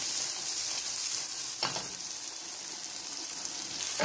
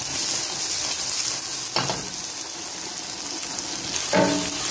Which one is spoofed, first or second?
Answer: first